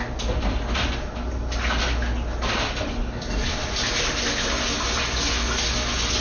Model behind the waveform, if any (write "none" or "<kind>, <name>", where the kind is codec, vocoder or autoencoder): none